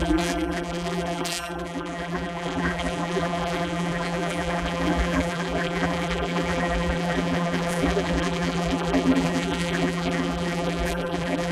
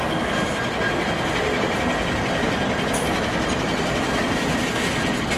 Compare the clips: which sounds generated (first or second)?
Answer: first